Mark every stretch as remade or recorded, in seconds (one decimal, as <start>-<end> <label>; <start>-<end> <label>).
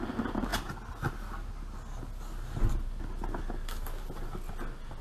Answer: 0.0-5.0 recorded